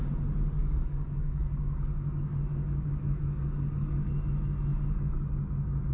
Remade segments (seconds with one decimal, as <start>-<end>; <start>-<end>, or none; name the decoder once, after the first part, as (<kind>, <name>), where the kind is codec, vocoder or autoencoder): 0.6-4.1 (codec, DAC)